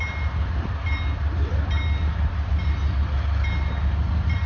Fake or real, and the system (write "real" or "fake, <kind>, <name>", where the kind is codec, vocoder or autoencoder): real